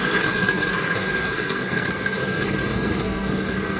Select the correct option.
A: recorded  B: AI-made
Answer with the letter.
B